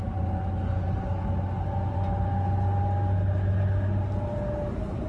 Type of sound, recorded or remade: recorded